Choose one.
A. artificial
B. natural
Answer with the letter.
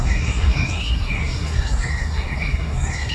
A